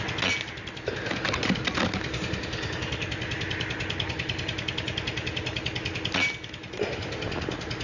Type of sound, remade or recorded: recorded